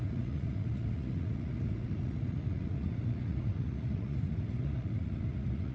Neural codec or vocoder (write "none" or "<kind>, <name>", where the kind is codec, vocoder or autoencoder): vocoder, Vocos